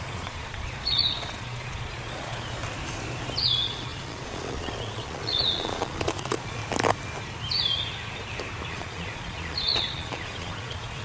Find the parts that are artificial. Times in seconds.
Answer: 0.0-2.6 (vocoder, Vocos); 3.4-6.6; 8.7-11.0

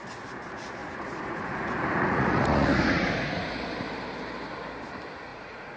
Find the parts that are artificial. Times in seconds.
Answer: 0.8-3.6 (vocoder, Vocos); 5.3-5.8

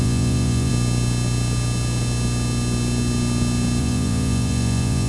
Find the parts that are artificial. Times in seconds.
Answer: 0.0-0.7 (vocoder, Vocos); 3.8-5.1

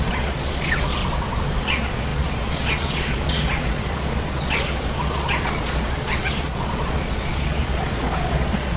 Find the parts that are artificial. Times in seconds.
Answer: 0.0-1.0 (vocoder, Vocos); 1.6-8.8

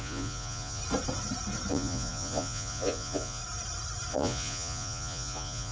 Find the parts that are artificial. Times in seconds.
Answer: 0.0-0.8 (vocoder, Vocos); 1.7-3.4; 4.1-5.7

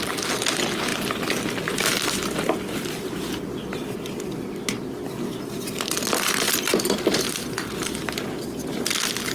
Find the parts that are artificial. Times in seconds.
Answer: none

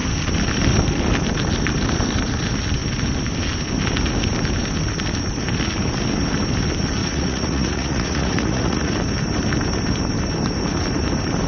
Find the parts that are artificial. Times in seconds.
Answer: 7.0-8.9 (vocoder, Vocos)

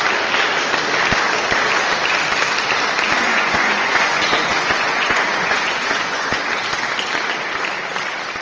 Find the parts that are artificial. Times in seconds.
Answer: 3.3-6.4 (vocoder, Vocos)